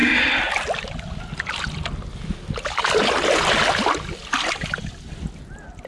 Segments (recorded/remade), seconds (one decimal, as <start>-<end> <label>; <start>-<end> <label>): 0.0-5.9 recorded

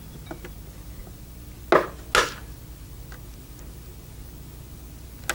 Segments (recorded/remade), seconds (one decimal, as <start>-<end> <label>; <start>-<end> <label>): 0.0-5.3 recorded

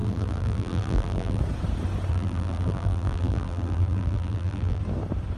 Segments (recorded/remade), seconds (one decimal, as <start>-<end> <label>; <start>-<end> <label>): 0.0-1.4 remade; 1.4-2.1 recorded; 2.1-4.8 remade; 4.8-5.4 recorded

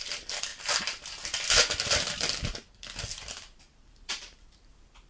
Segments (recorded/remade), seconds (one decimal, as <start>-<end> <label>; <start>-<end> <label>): 0.0-0.5 remade; 0.5-3.6 recorded; 3.6-5.1 remade

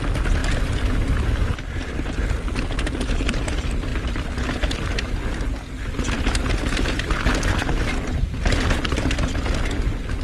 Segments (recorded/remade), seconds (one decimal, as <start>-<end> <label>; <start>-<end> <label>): 0.0-10.2 recorded

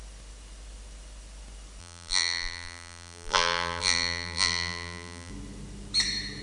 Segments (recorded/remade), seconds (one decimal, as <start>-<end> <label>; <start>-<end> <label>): 0.0-1.8 recorded; 1.8-5.3 remade; 5.3-6.4 recorded